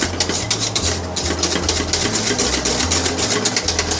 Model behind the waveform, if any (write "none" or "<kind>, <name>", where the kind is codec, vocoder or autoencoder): none